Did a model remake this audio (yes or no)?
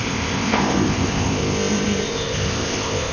yes